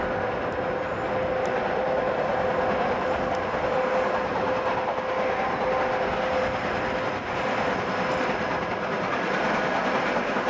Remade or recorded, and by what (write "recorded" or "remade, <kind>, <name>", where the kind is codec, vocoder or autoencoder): recorded